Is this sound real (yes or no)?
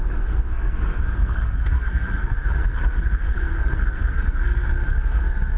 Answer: no